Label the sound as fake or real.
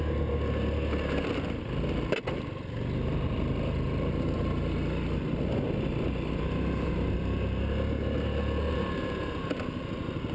real